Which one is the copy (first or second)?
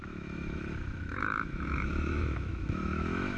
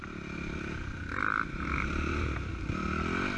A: first